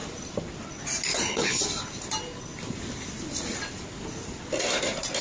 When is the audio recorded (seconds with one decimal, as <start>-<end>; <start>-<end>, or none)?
0.0-1.1; 1.6-5.2